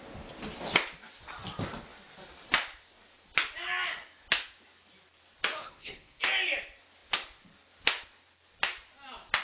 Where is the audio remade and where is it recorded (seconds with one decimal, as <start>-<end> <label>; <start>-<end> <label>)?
0.0-5.6 recorded; 5.6-6.2 remade; 6.2-9.4 recorded